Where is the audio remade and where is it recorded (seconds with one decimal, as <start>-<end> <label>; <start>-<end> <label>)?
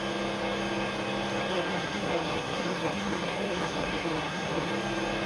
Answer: 0.0-1.5 recorded; 1.5-4.7 remade; 4.7-5.3 recorded